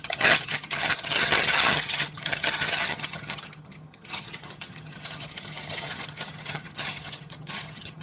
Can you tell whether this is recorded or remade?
remade